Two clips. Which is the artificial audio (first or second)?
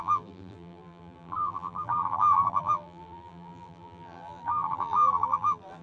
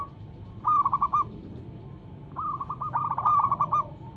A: first